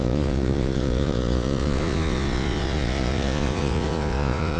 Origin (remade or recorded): remade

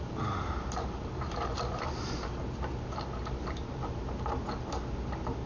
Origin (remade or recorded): recorded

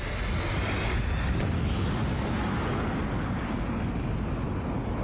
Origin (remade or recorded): recorded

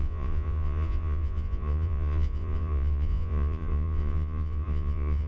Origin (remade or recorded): remade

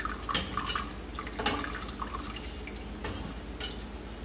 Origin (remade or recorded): recorded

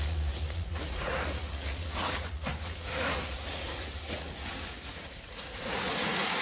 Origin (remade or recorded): remade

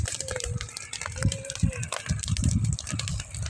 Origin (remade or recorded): recorded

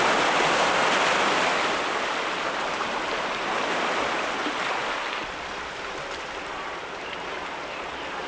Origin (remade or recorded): recorded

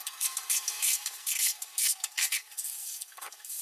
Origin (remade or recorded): remade